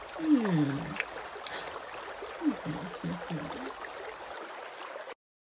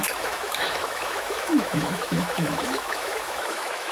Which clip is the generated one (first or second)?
second